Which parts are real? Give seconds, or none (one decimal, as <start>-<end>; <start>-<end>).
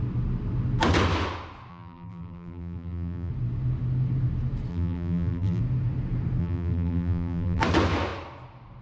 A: 0.0-1.7; 3.3-4.7; 5.6-6.4; 7.6-8.8